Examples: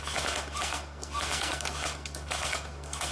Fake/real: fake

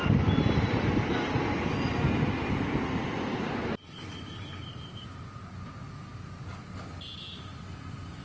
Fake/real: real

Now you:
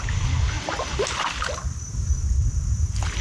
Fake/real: real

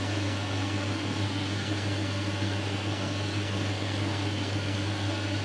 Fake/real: fake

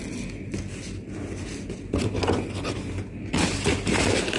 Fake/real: real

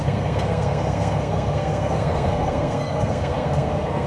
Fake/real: fake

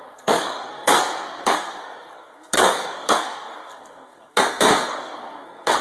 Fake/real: fake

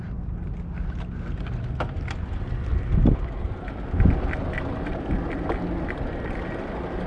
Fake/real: real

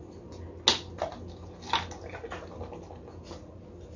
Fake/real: real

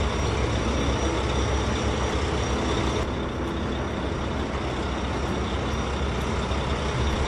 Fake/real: real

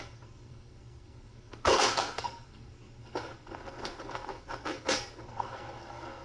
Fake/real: fake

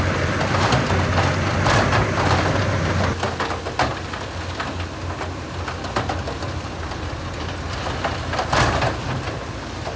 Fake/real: real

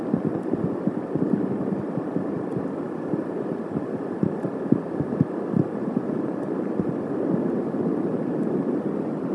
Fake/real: real